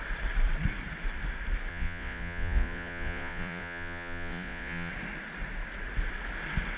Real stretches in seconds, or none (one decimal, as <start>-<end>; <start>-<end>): 0.0-1.7; 4.9-6.8